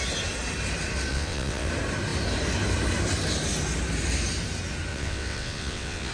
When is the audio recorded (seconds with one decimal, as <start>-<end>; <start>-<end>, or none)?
0.0-1.1; 1.7-4.9

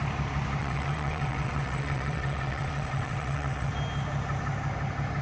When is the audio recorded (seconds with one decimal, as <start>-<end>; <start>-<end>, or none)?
0.0-0.6; 3.7-5.2